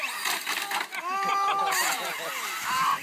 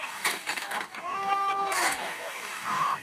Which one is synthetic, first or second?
second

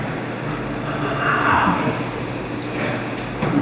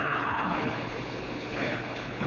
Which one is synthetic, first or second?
second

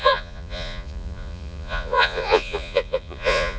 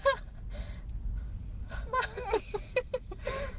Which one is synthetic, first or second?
first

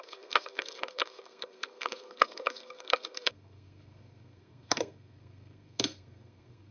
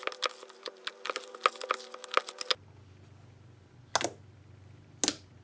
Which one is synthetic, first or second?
first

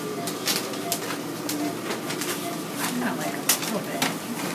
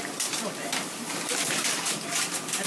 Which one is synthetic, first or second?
second